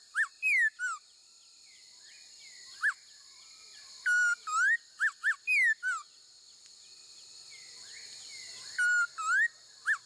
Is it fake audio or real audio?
real